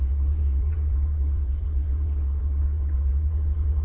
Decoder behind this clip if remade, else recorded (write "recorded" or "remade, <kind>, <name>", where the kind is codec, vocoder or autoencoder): remade, vocoder, WaveNeXt